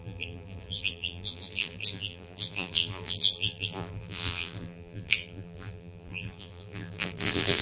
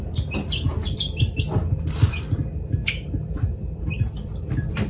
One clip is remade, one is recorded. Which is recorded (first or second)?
second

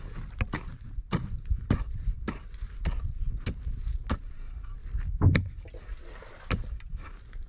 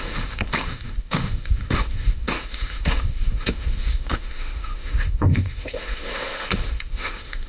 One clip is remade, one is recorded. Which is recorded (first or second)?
first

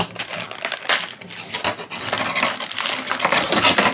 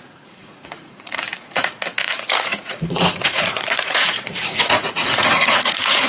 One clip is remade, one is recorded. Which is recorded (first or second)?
first